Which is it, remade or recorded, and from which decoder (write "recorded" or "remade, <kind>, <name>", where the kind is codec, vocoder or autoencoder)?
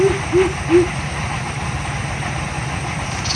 recorded